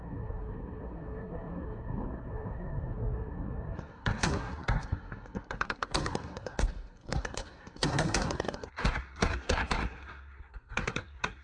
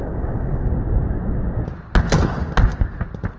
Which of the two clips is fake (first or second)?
first